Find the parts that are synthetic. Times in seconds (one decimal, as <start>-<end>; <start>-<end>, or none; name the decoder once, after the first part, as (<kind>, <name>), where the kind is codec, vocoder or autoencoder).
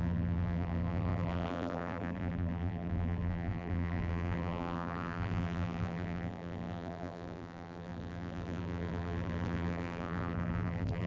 0.0-11.1 (vocoder, BigVGAN v2)